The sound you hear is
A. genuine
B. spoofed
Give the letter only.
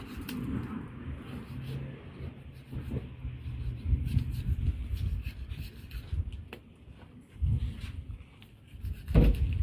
A